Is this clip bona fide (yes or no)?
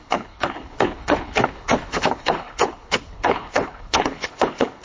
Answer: no